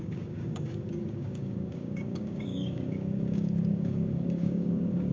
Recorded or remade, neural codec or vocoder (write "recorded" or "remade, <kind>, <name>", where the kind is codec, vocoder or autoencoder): remade, codec, DAC